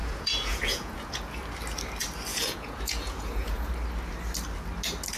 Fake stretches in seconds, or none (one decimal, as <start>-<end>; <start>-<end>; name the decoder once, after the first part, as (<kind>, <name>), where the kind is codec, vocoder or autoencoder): 0.0-1.4 (vocoder, Vocos); 2.3-3.7

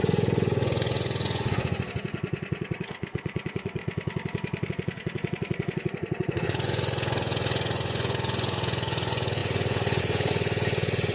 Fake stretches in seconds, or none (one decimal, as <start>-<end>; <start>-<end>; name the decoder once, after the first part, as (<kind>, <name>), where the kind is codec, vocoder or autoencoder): 0.0-3.8 (vocoder, Vocos); 4.7-11.1